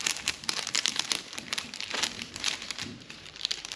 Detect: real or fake fake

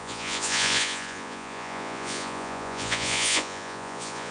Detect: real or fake fake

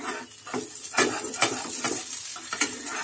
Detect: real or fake real